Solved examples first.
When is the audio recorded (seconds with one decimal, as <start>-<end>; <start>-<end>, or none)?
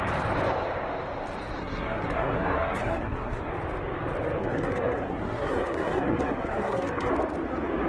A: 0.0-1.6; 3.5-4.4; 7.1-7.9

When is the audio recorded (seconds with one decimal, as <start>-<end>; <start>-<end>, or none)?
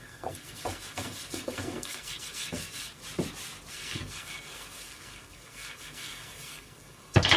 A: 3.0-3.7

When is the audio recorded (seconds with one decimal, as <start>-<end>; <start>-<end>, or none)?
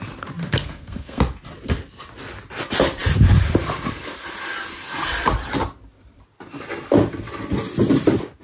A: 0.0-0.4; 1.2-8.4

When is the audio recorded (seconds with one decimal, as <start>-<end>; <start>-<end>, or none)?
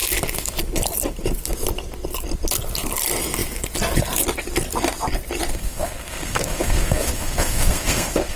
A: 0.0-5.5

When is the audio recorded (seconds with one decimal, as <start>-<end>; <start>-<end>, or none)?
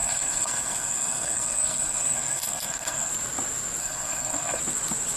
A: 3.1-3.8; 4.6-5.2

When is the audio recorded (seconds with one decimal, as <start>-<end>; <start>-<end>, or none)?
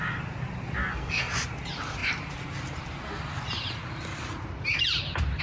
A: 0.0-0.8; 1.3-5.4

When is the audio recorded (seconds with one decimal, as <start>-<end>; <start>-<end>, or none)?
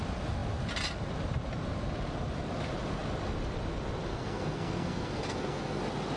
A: 0.0-4.1; 5.8-6.2